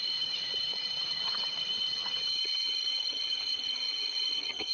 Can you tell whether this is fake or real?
fake